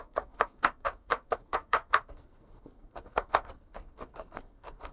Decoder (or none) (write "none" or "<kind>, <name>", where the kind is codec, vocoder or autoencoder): codec, SNAC